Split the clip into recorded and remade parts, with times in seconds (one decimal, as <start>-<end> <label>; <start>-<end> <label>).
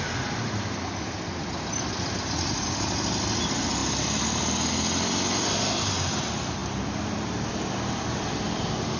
0.0-9.0 recorded